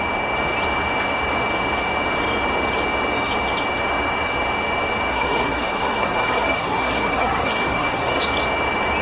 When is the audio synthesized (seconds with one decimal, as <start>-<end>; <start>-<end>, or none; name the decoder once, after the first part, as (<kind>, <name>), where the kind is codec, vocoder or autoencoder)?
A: 5.1-8.2 (codec, SNAC)

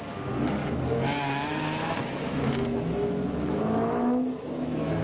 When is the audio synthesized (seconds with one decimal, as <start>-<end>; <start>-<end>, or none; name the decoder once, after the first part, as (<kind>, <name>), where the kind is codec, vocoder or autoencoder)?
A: 0.0-5.0 (autoencoder, DAC-VAE)

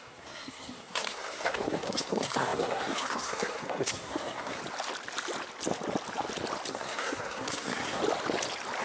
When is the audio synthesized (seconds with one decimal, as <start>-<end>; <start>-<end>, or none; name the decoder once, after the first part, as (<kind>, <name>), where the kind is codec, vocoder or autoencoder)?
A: 0.0-4.6 (codec, SNAC); 6.7-8.0

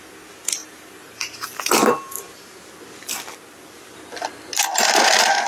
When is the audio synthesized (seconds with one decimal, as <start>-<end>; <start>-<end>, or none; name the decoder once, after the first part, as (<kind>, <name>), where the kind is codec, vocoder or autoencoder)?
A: 0.6-2.5 (vocoder, BigVGAN v2)

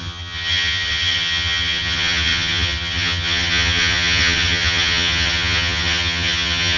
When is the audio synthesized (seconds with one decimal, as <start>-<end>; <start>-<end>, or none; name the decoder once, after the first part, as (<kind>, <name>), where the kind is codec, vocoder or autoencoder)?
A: 0.0-6.8 (vocoder, HiFi-GAN)